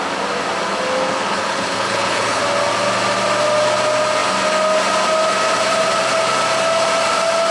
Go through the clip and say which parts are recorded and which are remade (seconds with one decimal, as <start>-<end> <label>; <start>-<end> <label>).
0.0-1.0 recorded; 1.0-2.4 remade; 2.4-7.5 recorded